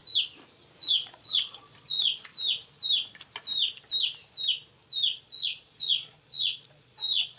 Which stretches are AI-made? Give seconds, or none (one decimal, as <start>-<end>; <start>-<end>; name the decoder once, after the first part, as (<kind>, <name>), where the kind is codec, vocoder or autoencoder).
1.0-2.3 (vocoder, Vocos); 5.2-7.4